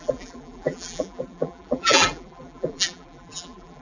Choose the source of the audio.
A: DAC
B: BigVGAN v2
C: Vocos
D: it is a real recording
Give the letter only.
B